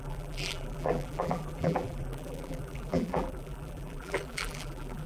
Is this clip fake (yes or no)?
yes